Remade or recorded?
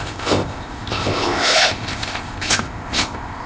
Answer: remade